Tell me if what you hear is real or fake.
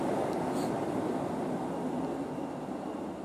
real